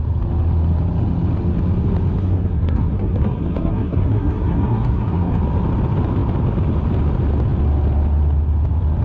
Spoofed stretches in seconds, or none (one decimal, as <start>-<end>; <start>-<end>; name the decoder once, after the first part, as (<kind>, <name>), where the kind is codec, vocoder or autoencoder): 2.2-5.4 (codec, SNAC)